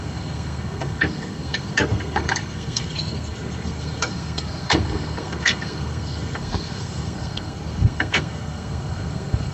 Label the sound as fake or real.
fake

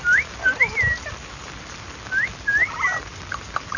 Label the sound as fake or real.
real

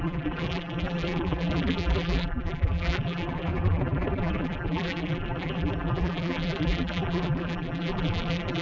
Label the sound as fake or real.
fake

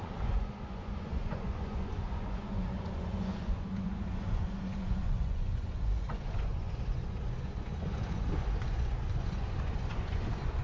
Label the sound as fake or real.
fake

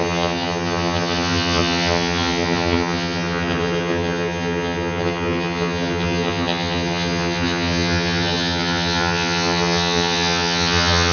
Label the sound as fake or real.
fake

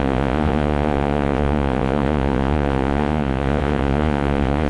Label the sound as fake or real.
fake